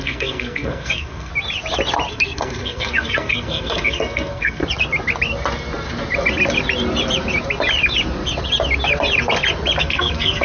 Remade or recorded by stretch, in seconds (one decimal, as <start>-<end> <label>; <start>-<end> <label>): 0.0-1.3 remade; 1.3-2.1 recorded; 2.1-4.6 remade; 4.6-9.8 recorded; 9.8-10.4 remade